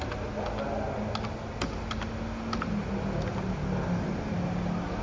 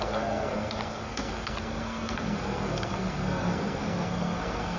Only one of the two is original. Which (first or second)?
first